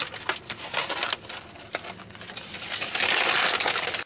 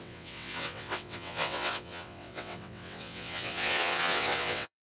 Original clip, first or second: first